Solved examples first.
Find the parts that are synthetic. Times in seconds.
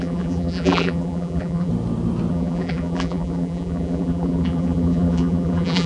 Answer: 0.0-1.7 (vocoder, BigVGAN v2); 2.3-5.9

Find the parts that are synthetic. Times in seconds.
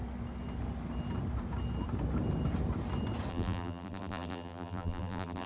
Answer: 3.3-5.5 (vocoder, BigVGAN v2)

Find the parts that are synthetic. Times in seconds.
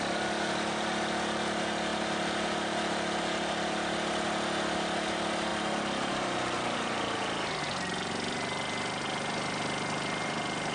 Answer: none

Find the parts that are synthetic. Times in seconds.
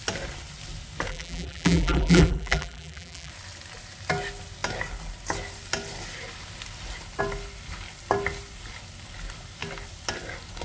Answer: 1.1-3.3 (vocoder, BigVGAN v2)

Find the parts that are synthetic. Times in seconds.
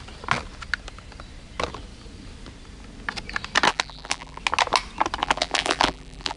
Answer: 3.7-4.4 (vocoder, BigVGAN v2); 5.2-6.4